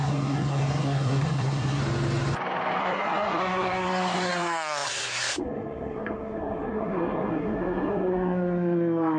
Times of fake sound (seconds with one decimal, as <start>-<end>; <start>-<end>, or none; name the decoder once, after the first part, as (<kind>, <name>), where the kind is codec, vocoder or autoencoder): 0.0-1.8 (codec, SNAC); 2.8-9.2